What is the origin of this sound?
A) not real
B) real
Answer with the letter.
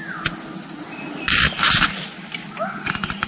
B